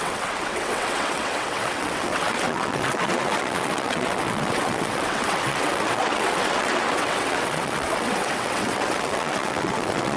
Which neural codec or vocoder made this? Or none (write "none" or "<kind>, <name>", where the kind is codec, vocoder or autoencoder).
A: vocoder, WaveNeXt